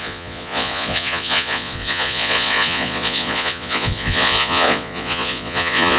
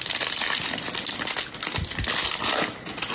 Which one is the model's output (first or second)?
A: first